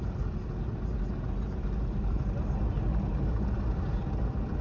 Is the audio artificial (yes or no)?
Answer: no